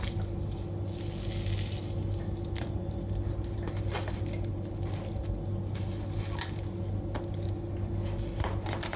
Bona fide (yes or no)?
yes